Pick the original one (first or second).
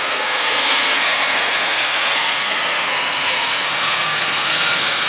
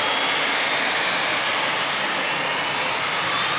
second